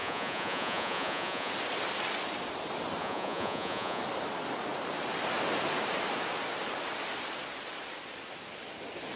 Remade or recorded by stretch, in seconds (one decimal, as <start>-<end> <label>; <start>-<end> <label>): 0.0-1.5 remade; 1.5-3.0 recorded; 3.0-4.0 remade; 4.0-9.2 recorded